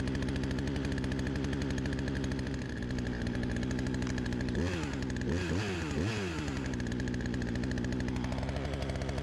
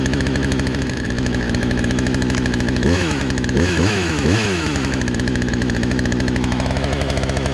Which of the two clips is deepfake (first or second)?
second